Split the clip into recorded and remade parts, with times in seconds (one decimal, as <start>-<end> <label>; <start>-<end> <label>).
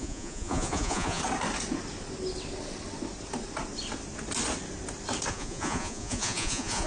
0.0-1.2 remade; 1.2-5.3 recorded; 5.3-6.9 remade